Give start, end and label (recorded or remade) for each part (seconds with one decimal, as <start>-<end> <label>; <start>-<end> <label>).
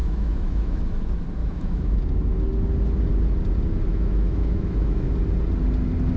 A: 0.0-0.8 remade; 0.8-1.4 recorded; 1.4-2.0 remade; 2.0-3.9 recorded; 3.9-5.1 remade; 5.1-6.2 recorded